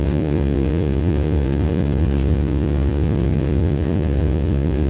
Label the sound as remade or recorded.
remade